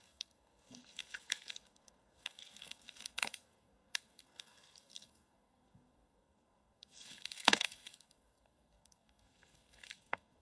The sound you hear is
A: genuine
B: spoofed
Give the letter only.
B